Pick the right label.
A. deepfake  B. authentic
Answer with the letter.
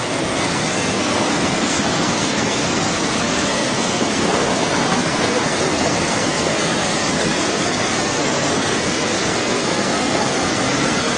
A